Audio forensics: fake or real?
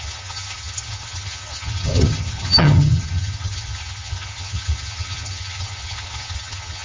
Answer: fake